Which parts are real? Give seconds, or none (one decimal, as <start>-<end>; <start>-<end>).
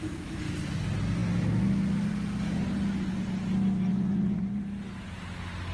0.0-3.9; 4.6-5.7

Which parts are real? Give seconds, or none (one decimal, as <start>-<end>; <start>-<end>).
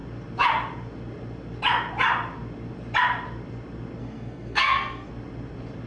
0.0-4.0; 5.1-5.9